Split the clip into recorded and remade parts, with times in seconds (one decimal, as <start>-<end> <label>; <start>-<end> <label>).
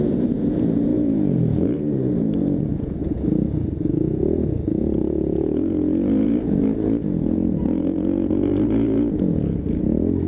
0.0-10.3 remade